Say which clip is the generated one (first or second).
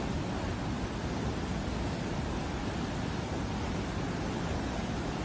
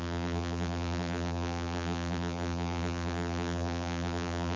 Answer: second